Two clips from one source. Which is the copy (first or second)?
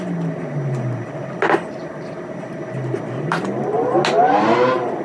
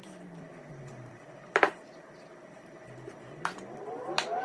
second